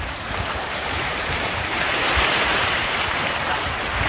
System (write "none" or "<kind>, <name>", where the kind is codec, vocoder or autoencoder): vocoder, BigVGAN v2